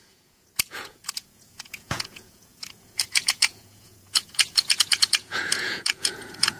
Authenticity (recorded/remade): remade